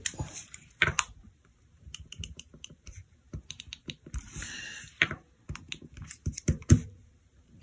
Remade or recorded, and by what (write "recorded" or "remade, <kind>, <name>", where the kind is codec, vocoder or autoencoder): remade, vocoder, BigVGAN v2